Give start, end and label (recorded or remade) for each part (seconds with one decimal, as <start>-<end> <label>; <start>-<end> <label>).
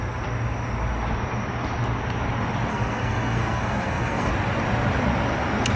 0.0-2.7 recorded; 2.7-4.3 remade; 4.3-5.8 recorded